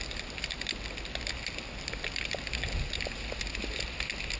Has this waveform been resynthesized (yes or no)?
no